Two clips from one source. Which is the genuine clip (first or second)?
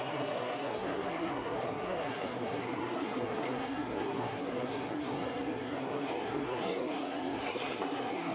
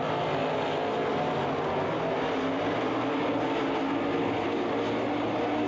second